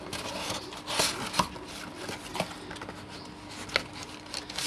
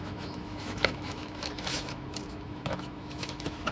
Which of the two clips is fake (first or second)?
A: second